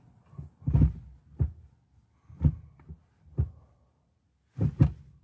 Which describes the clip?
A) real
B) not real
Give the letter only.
A